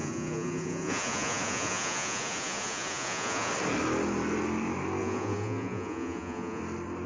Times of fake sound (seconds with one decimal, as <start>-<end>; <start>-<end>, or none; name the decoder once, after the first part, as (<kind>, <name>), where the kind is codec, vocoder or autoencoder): 0.0-3.5 (vocoder, Vocos); 5.0-6.6